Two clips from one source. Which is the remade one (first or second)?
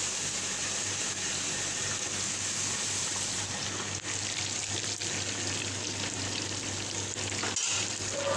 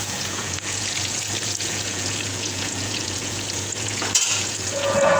second